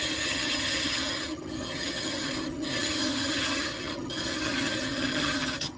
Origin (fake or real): fake